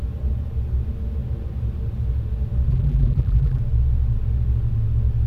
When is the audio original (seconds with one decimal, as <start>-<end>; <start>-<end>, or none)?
0.0-2.7; 3.6-5.3